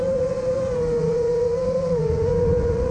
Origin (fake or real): fake